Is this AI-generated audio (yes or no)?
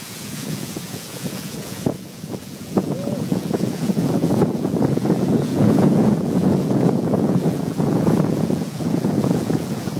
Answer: yes